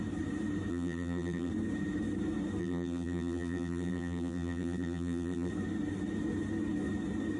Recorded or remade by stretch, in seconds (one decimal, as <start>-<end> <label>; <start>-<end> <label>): 0.0-0.7 recorded; 0.7-1.5 remade; 1.5-2.6 recorded; 2.6-5.5 remade; 5.5-7.4 recorded